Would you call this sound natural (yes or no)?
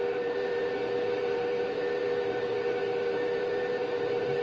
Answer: no